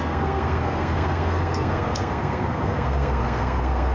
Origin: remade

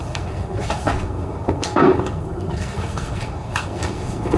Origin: remade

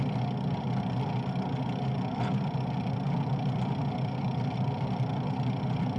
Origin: recorded